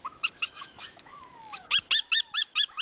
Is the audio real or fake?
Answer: fake